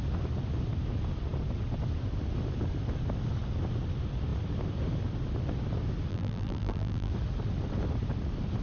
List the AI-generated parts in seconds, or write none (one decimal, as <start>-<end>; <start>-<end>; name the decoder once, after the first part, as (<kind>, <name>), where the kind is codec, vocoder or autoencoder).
6.1-7.1 (vocoder, BigVGAN v2)

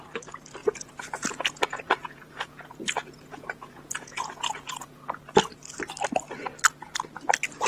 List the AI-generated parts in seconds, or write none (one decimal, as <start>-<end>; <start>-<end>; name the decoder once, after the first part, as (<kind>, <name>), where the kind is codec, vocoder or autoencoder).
0.6-5.2 (vocoder, Vocos)